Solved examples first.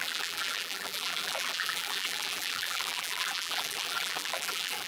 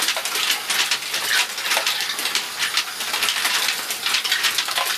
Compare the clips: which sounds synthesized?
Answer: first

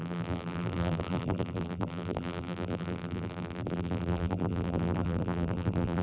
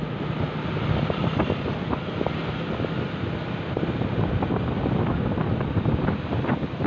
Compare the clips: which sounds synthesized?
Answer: first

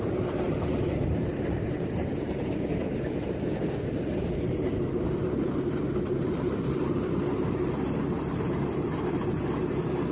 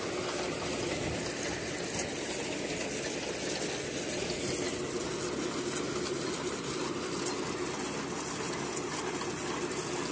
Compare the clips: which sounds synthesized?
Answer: first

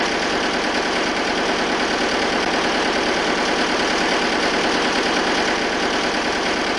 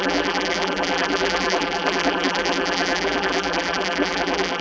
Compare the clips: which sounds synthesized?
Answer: second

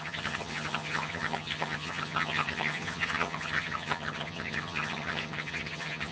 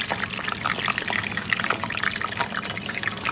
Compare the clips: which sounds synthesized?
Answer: first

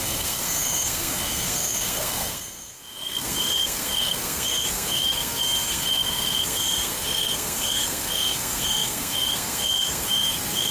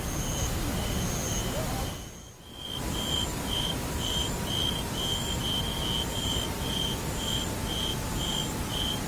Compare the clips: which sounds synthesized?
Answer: first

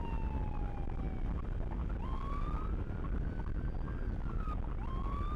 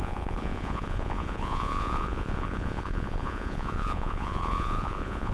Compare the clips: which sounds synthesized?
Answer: second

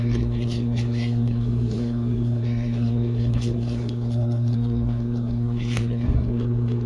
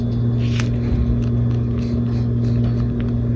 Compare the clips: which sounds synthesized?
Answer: first